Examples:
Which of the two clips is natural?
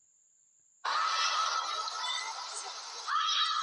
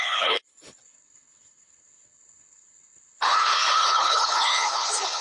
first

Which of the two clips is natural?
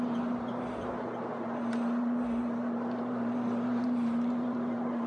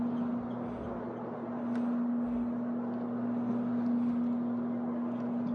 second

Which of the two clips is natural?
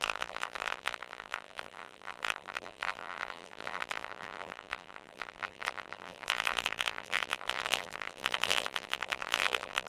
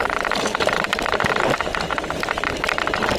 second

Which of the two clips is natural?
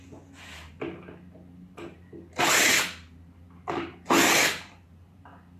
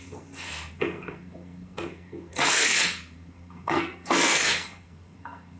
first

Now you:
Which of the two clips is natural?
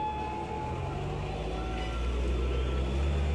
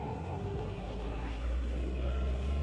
first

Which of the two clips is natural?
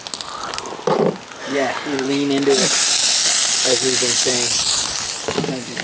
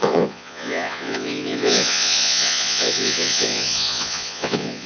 first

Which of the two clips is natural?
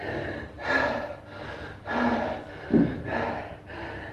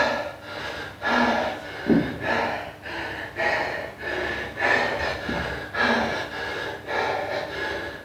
second